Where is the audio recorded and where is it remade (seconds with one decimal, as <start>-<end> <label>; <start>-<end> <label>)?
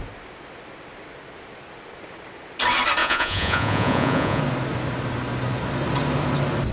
0.0-3.0 recorded; 3.0-4.4 remade; 4.4-6.7 recorded